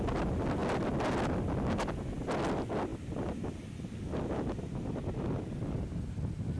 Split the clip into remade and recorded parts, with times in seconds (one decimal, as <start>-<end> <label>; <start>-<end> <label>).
0.0-6.6 recorded